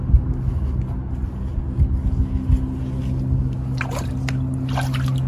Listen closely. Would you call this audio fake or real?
real